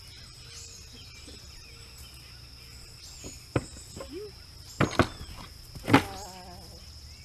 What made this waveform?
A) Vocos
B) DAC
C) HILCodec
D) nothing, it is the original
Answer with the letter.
D